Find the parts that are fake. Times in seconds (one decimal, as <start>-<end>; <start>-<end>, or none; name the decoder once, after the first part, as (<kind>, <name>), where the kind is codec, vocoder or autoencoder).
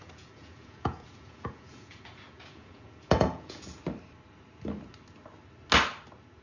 0.0-3.8 (vocoder, Vocos)